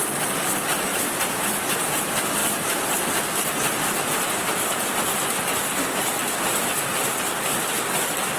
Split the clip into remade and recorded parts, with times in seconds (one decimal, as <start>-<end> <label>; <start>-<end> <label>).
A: 0.0-0.9 recorded; 0.9-2.0 remade; 2.0-8.4 recorded